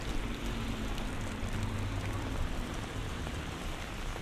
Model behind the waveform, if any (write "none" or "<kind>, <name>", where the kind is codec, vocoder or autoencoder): vocoder, BigVGAN v2